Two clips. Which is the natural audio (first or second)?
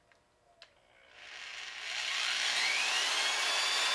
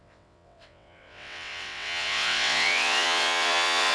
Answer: first